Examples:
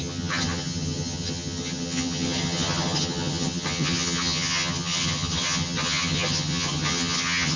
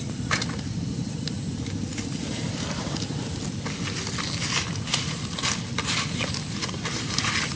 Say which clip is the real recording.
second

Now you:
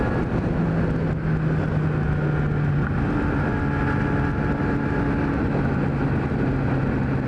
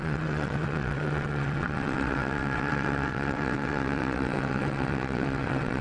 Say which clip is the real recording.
first